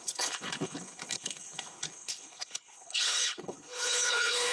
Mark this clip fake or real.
fake